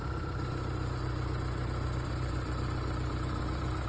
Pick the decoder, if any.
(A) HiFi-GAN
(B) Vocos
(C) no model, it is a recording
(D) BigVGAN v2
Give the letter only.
D